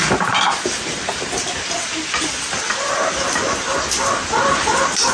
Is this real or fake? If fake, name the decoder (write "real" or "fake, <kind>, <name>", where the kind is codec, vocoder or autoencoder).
real